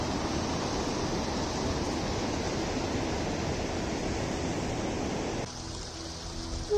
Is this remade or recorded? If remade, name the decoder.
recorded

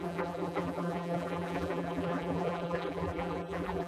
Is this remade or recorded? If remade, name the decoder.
remade, vocoder, BigVGAN v2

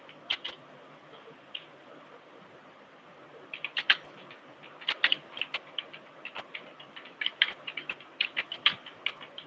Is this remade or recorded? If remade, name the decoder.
remade, vocoder, BigVGAN v2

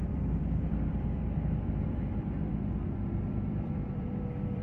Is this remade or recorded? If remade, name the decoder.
remade, vocoder, BigVGAN v2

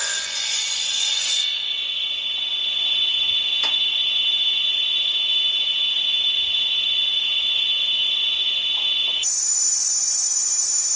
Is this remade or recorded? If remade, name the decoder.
remade, vocoder, Vocos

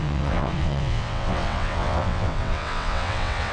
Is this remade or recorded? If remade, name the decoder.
remade, vocoder, WaveNeXt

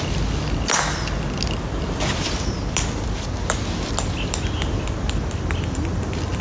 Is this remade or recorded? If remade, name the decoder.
recorded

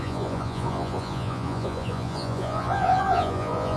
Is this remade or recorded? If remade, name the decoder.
remade, vocoder, Vocos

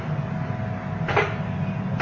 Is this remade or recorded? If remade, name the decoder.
recorded